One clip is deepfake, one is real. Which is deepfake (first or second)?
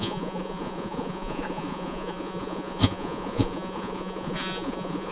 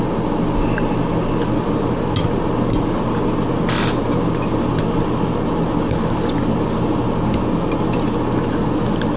first